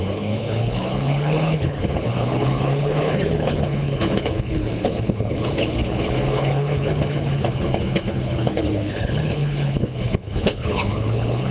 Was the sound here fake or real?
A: fake